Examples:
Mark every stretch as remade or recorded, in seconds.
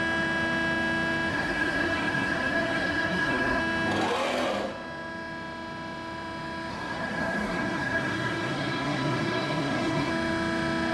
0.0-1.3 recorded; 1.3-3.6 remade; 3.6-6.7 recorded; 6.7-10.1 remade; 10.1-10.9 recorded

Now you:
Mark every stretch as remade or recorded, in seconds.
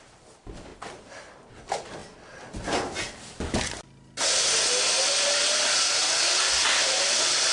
0.0-0.7 remade; 0.7-1.5 recorded; 1.5-2.0 remade; 2.0-6.5 recorded; 6.5-7.5 remade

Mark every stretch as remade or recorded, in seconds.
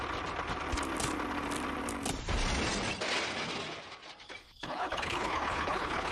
0.0-4.4 recorded; 4.4-6.1 remade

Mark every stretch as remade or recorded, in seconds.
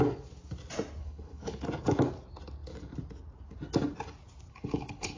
0.0-1.0 recorded; 1.0-1.6 remade; 1.6-4.5 recorded; 4.5-5.2 remade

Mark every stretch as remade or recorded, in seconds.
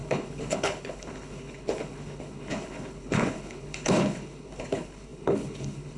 0.0-6.0 remade